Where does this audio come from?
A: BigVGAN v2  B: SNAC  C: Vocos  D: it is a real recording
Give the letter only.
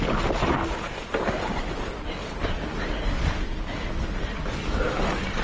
D